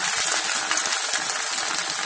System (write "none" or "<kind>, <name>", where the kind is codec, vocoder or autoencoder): none